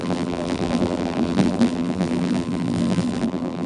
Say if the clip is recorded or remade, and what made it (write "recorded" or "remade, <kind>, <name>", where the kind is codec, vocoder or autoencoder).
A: remade, vocoder, BigVGAN v2